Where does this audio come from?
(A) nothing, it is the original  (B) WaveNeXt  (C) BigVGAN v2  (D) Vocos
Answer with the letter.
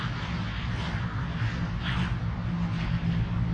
A